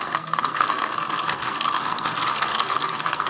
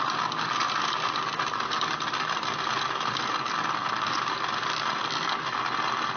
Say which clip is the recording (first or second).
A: second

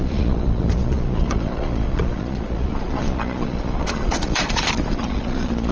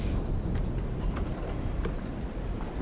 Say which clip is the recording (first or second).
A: second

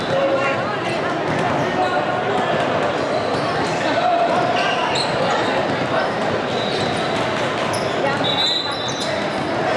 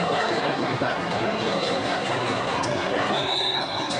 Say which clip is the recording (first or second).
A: first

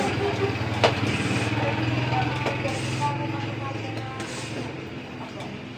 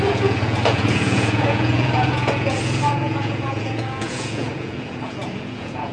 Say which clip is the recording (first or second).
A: first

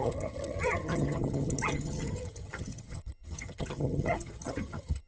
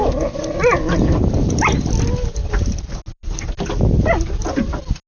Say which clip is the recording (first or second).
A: second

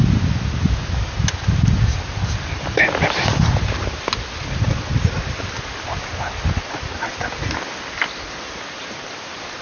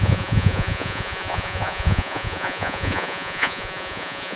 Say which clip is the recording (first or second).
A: first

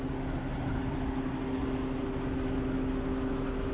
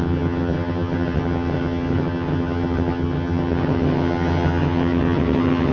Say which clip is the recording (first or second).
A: first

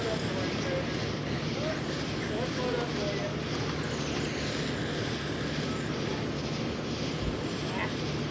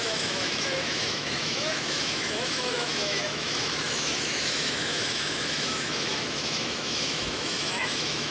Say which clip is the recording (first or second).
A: first